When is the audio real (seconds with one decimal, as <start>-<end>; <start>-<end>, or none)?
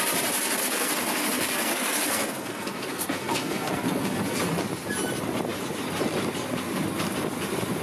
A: 0.0-0.6; 4.4-7.8